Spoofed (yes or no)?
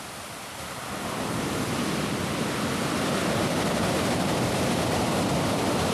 yes